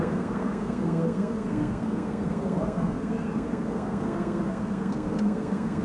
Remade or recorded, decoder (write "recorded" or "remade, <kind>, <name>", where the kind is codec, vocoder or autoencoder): remade, codec, SNAC